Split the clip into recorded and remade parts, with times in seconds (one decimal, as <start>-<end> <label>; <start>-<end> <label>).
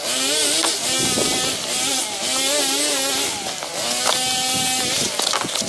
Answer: 0.0-5.7 recorded